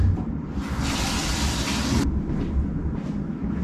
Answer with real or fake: real